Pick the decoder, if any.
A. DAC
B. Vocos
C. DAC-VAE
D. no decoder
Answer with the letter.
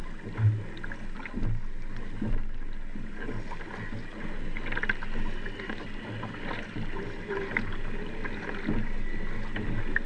D